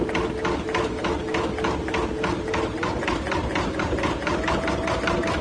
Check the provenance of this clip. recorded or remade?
recorded